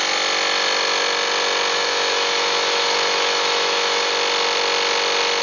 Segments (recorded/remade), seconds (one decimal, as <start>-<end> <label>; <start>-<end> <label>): 0.0-1.7 recorded; 1.7-4.1 remade; 4.1-5.4 recorded